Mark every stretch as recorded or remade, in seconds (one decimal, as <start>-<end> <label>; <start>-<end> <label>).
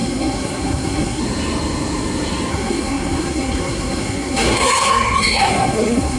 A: 0.0-1.2 remade; 1.2-2.5 recorded; 2.5-6.2 remade